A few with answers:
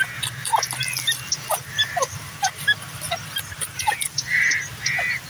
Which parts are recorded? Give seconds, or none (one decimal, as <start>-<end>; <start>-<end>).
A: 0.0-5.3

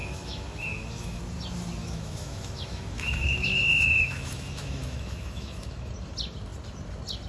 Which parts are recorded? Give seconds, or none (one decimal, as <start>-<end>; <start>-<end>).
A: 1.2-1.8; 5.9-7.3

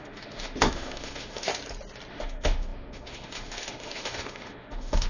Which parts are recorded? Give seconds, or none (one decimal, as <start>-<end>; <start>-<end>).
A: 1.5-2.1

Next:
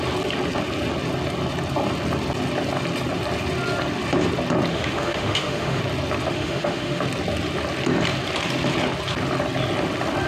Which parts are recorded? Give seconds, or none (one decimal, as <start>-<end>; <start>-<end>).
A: 0.0-4.7; 5.8-6.3; 7.0-10.3

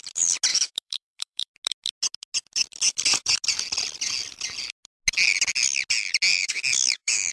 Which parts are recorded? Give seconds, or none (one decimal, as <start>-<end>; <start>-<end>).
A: 0.0-0.5; 1.5-6.4

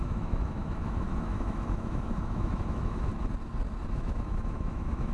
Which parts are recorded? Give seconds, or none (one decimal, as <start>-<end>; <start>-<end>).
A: 3.1-3.9

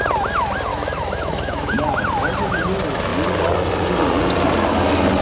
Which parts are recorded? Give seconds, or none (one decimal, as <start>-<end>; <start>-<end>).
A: 0.0-0.7; 2.0-5.2